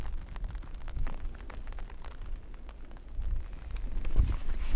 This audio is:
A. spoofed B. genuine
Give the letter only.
B